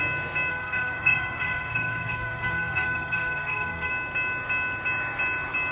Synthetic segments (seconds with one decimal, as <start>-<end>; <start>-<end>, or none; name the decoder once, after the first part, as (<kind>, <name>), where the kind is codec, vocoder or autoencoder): 0.5-3.9 (codec, SNAC)